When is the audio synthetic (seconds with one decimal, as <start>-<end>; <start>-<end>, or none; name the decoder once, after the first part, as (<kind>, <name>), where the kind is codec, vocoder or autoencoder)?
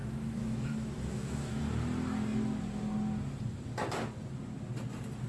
0.0-1.6 (autoencoder, DAC-VAE)